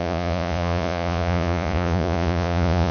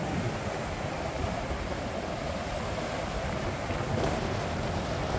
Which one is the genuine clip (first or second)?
second